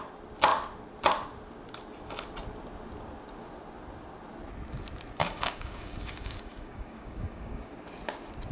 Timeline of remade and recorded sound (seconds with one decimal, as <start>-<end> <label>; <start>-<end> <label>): 0.0-5.2 recorded; 5.2-7.7 remade; 7.7-8.5 recorded